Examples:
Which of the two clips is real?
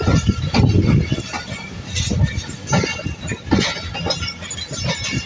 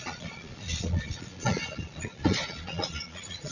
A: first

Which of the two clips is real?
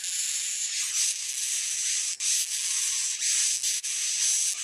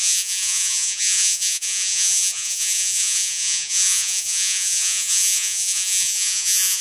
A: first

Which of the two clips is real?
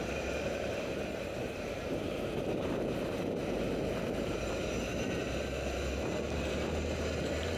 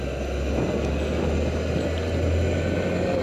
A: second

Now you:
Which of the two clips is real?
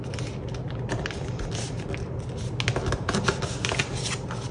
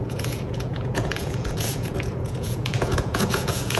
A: first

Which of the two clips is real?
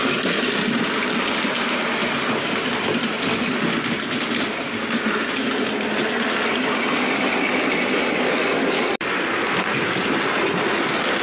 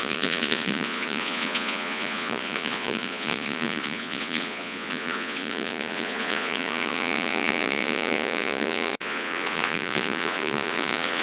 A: first